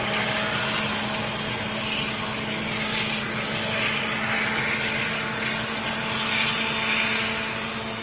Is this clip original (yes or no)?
yes